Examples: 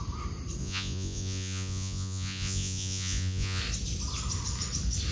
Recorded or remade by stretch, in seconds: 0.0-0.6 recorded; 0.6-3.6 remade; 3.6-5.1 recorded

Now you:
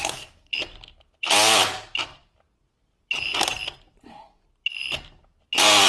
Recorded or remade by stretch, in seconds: 0.0-0.5 remade; 0.5-4.0 recorded; 4.0-4.4 remade; 4.4-5.9 recorded

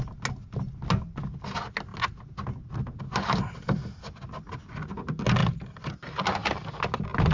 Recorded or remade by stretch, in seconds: 0.0-7.3 recorded

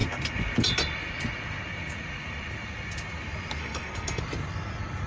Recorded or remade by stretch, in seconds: 0.0-3.6 recorded; 3.6-4.2 remade; 4.2-5.1 recorded

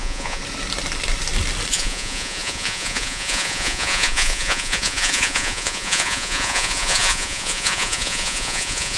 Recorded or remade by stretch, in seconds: 0.0-0.4 remade; 0.4-1.7 recorded; 1.7-9.0 remade

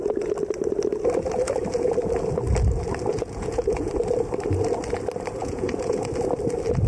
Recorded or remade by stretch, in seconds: 0.0-3.1 recorded; 3.1-3.9 remade; 3.9-5.4 recorded; 5.4-6.0 remade; 6.0-6.9 recorded

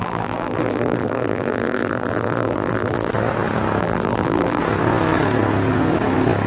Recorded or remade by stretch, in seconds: 0.0-3.1 remade; 3.1-3.8 recorded; 3.8-4.6 remade; 4.6-6.5 recorded

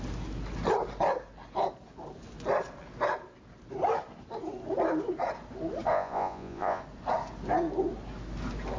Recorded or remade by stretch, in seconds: 0.0-5.9 recorded; 5.9-6.8 remade; 6.8-8.8 recorded